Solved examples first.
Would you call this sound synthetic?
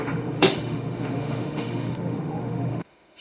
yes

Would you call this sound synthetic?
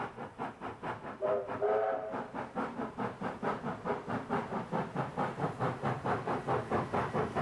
no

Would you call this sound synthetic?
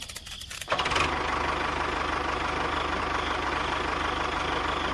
no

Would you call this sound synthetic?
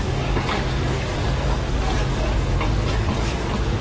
yes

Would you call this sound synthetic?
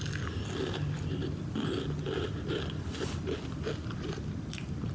yes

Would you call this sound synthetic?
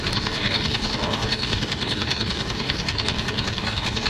yes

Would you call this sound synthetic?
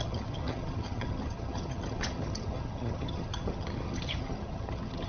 yes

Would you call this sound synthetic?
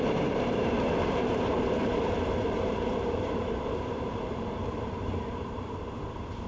yes